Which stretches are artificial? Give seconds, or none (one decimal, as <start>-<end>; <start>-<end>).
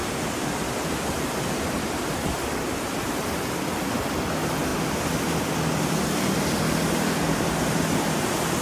0.0-3.9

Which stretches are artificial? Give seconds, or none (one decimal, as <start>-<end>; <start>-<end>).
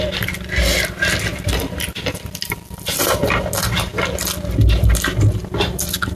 1.3-3.0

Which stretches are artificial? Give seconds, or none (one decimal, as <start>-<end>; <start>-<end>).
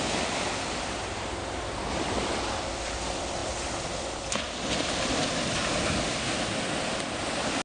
none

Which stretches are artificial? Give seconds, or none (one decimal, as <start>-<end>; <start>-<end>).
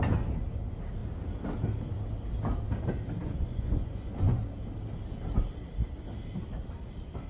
3.2-4.4